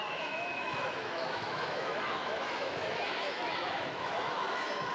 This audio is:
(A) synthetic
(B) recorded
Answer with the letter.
A